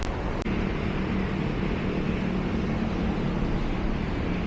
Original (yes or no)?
yes